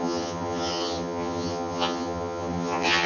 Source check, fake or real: fake